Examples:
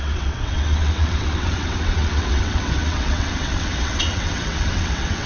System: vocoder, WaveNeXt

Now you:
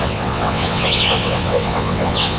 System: vocoder, WaveNeXt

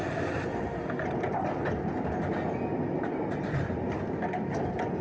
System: none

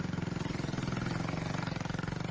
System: none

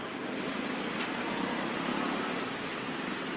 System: none